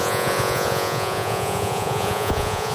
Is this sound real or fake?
fake